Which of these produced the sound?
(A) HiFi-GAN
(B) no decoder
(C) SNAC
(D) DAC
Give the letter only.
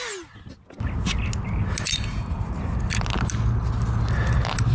B